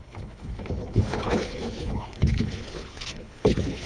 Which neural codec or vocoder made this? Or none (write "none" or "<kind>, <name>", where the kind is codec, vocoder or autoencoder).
codec, HILCodec